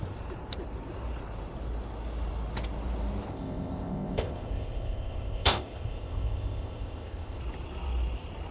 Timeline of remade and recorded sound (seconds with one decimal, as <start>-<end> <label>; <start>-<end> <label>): 0.0-3.3 recorded; 3.3-7.4 remade; 7.4-8.5 recorded